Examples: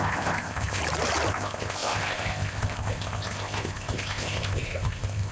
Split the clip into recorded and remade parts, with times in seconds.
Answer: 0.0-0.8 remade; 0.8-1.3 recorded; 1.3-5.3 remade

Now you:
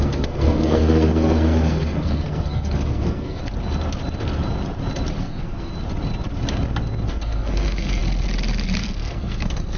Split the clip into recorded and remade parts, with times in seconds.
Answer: 0.0-3.4 remade; 3.4-5.2 recorded; 5.2-5.7 remade; 5.7-7.1 recorded; 7.1-8.0 remade; 8.0-8.8 recorded; 8.8-9.8 remade